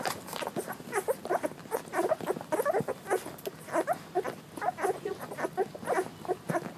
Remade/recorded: recorded